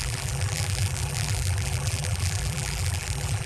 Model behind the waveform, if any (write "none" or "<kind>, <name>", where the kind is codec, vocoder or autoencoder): vocoder, BigVGAN v2